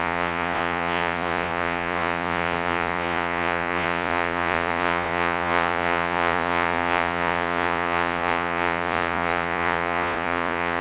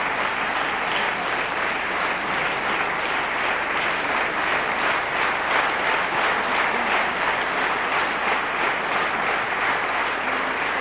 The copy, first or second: first